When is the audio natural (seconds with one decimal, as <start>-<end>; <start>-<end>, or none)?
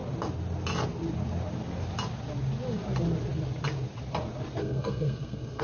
0.0-4.6